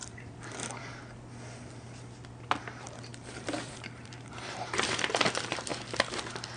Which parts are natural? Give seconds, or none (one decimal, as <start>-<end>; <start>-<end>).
0.8-3.1; 5.1-6.6